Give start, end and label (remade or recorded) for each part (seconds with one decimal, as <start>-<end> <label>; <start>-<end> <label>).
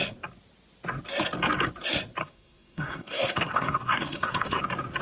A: 0.0-2.2 recorded; 2.2-4.6 remade; 4.6-5.0 recorded